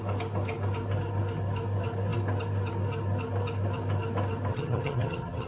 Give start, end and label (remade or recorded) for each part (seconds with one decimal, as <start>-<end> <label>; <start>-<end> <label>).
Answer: 0.0-4.5 recorded; 4.5-5.5 remade